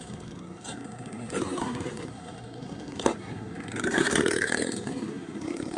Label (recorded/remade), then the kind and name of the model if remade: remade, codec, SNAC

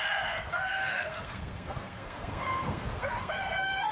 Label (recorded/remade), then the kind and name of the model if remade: remade, codec, SNAC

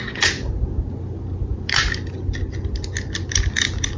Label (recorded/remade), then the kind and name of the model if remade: recorded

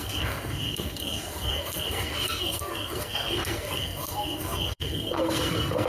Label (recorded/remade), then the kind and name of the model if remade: remade, codec, SNAC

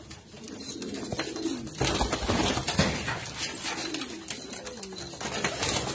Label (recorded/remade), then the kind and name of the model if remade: recorded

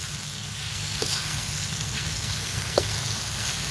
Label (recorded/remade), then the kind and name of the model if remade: remade, codec, SNAC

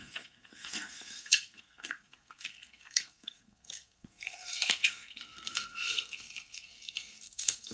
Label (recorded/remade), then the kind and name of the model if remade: remade, codec, SNAC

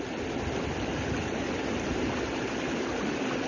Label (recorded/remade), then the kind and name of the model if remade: recorded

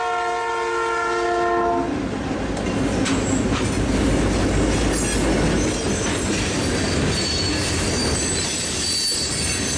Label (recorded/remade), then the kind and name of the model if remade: recorded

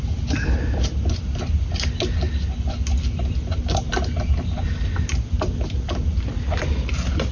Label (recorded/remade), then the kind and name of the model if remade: recorded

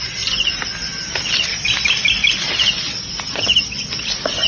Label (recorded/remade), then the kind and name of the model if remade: recorded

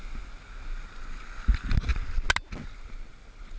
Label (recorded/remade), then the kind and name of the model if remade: recorded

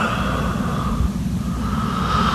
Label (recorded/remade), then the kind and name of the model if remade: recorded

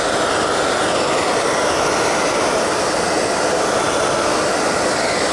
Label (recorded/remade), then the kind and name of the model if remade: recorded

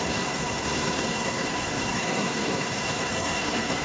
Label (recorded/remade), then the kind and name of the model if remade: remade, codec, SNAC